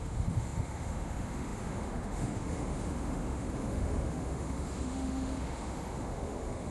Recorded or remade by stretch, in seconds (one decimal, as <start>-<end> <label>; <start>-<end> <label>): 0.0-6.7 remade